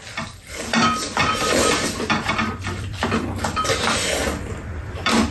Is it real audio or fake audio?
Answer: fake